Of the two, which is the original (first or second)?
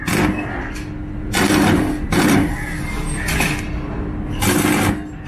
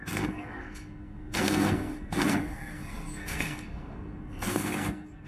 first